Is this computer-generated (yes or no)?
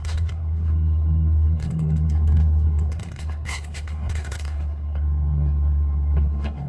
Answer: yes